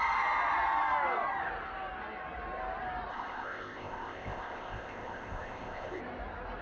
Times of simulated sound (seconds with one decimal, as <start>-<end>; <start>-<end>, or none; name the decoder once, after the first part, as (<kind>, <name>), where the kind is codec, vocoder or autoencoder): 3.1-6.0 (codec, ZipCodec)